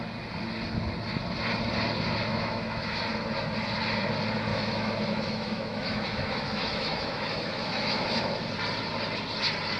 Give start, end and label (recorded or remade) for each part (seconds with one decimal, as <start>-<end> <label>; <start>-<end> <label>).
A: 0.0-2.3 recorded; 2.3-3.0 remade; 3.0-4.5 recorded; 4.5-8.4 remade; 8.4-9.8 recorded

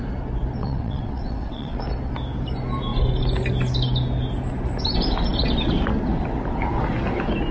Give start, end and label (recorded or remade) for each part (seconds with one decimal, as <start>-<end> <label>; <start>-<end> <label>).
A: 0.0-0.6 recorded; 0.6-1.8 remade; 1.8-7.5 recorded

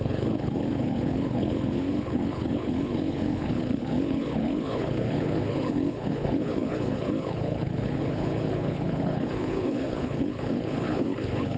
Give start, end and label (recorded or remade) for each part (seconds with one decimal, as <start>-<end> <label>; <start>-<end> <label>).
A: 0.0-11.6 remade